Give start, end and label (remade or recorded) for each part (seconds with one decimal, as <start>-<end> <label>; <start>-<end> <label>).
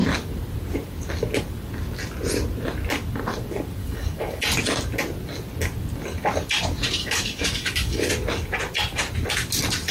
0.0-3.8 recorded; 3.8-4.4 remade; 4.4-7.0 recorded; 7.0-8.1 remade; 8.1-9.9 recorded